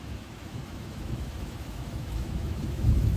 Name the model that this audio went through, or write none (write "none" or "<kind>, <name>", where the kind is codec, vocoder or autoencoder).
autoencoder, DAC-VAE